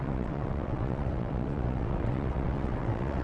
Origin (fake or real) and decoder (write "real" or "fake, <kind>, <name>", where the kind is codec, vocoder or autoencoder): fake, vocoder, WaveNeXt